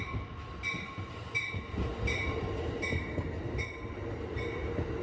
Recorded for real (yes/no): yes